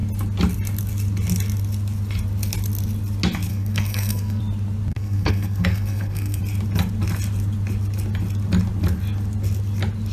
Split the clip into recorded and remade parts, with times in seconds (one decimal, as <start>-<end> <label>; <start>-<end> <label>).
0.0-3.5 recorded; 3.5-4.4 remade; 4.4-4.9 recorded; 4.9-6.4 remade; 6.4-10.1 recorded